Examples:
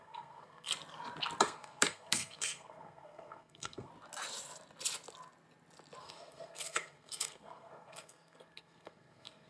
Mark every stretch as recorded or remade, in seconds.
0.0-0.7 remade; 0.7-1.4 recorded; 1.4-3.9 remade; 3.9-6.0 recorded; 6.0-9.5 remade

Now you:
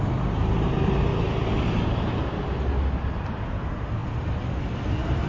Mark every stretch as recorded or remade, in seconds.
0.0-4.0 recorded; 4.0-4.8 remade; 4.8-5.3 recorded

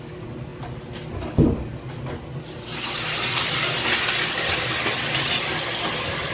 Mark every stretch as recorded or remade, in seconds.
0.0-6.3 recorded